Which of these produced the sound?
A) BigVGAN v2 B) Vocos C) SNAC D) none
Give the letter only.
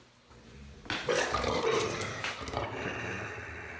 D